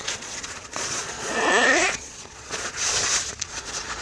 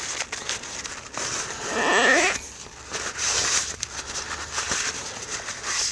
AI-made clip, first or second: first